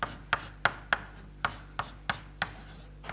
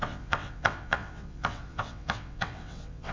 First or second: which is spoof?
second